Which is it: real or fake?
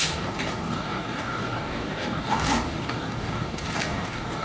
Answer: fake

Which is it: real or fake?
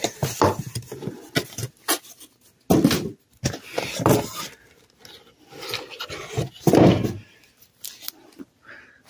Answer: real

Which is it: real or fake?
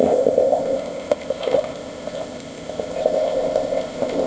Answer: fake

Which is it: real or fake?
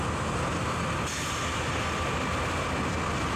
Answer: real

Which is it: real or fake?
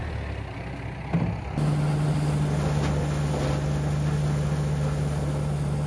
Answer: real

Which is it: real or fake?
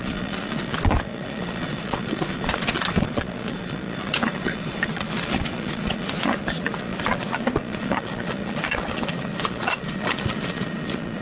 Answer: fake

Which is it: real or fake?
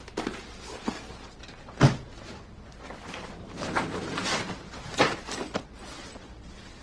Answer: real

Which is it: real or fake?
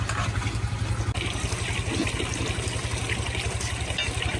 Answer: real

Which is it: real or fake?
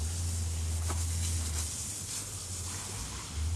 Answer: real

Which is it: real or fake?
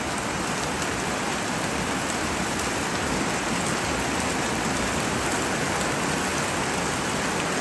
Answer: real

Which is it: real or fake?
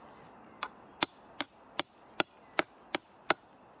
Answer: real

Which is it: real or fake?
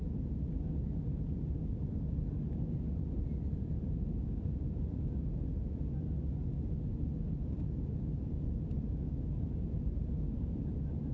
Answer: real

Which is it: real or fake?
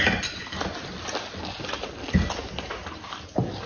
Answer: real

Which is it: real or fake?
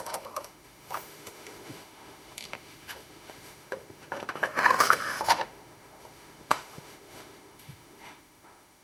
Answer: fake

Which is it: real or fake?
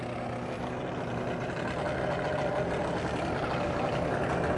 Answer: real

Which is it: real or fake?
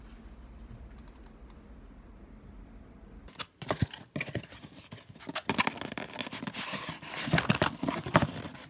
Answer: real